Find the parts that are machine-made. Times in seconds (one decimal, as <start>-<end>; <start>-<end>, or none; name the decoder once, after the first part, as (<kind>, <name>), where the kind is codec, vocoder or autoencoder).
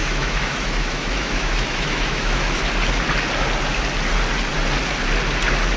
0.0-2.6 (autoencoder, DAC-VAE)